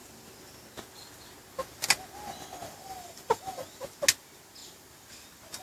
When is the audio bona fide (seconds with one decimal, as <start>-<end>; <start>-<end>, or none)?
0.0-2.6; 3.6-5.6